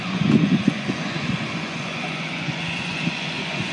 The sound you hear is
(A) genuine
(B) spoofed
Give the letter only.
B